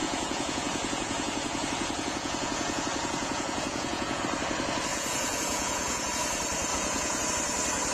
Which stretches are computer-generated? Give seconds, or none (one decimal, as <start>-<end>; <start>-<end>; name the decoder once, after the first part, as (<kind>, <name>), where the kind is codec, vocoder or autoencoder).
0.0-4.2 (vocoder, Vocos); 4.9-6.1; 6.7-7.3